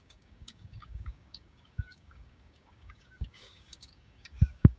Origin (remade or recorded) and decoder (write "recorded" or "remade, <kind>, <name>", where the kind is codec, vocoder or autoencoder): remade, codec, DAC